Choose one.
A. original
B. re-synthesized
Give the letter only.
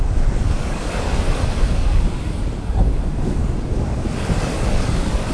B